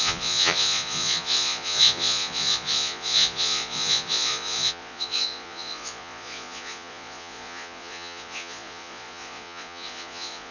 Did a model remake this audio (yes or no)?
yes